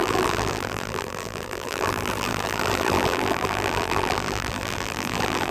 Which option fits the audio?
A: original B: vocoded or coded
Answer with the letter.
B